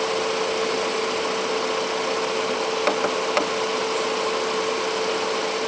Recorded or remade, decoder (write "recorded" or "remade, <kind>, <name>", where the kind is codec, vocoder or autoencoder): recorded